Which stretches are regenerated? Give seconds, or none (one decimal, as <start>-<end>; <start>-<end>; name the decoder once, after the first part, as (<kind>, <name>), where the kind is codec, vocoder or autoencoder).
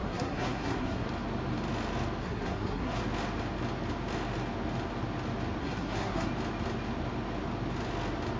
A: 0.0-1.1 (codec, SNAC); 2.2-3.0; 5.6-6.3